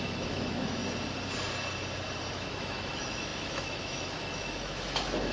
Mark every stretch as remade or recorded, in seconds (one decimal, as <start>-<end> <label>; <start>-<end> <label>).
0.0-0.8 remade; 0.8-2.3 recorded; 2.3-5.3 remade